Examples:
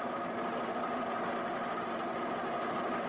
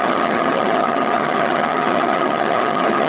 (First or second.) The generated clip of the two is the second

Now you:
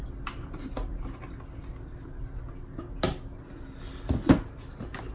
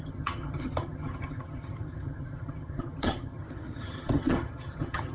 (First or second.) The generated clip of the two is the second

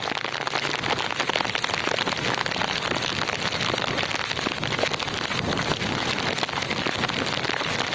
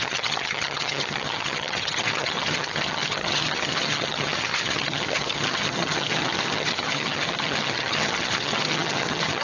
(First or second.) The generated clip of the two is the second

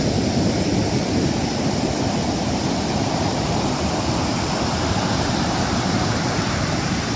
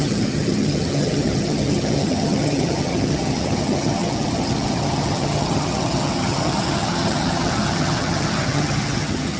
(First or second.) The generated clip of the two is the second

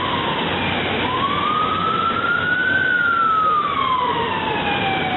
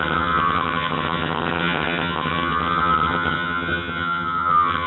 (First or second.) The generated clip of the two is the second